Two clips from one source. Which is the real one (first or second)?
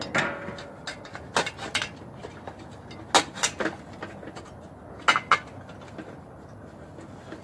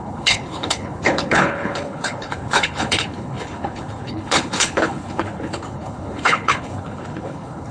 first